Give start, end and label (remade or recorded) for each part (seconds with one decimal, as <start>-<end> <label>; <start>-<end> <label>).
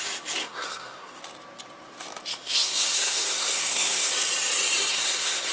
0.0-0.4 recorded; 0.4-1.2 remade; 1.2-2.3 recorded; 2.3-4.1 remade; 4.1-4.9 recorded; 4.9-5.5 remade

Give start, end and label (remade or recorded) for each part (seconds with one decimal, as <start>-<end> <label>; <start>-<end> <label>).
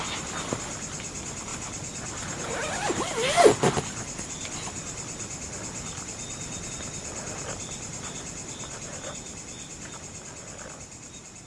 0.0-11.5 recorded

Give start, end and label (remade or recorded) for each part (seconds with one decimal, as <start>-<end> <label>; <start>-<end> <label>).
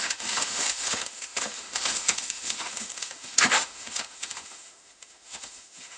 0.0-6.0 remade